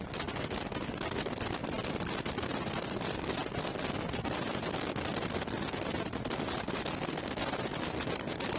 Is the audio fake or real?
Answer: real